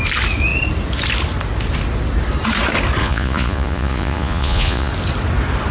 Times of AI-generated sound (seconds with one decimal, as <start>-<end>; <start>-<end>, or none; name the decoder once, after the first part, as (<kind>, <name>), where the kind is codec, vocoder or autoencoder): 3.0-4.9 (vocoder, Vocos)